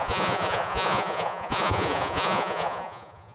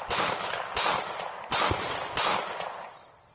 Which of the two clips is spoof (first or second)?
first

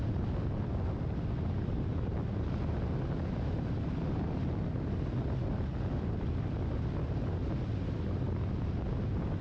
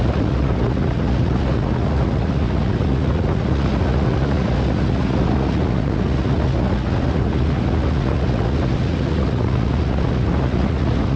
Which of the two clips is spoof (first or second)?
second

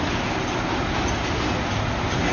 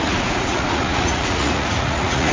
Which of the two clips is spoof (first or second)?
second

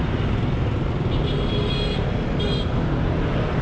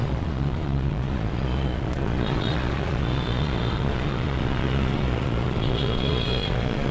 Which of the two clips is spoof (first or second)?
second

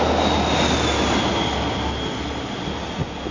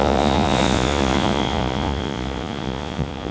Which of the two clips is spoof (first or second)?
second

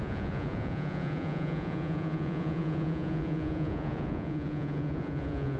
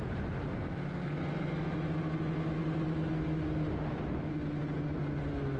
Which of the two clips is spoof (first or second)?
first